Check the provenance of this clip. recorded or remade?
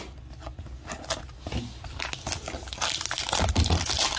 recorded